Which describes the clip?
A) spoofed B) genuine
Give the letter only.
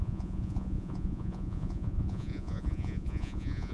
A